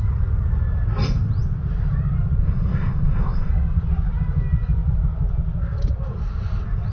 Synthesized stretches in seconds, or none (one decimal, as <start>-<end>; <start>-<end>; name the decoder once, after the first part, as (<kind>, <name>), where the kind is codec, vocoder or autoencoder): 2.4-3.5 (codec, SNAC)